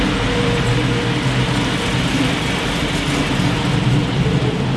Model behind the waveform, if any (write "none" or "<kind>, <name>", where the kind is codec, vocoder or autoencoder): none